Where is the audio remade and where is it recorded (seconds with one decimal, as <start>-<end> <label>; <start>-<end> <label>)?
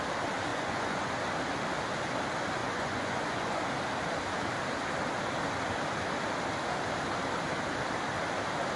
0.0-0.5 recorded; 0.5-1.1 remade; 1.1-2.6 recorded; 2.6-3.6 remade; 3.6-8.8 recorded